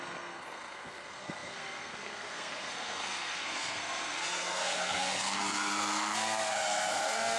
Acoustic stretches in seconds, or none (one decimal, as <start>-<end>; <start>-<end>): none